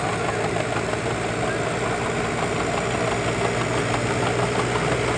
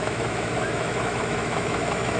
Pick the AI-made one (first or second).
second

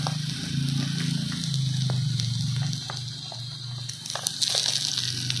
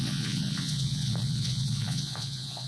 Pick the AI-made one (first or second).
second